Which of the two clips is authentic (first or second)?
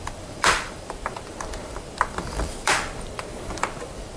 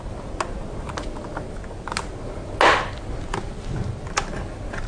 second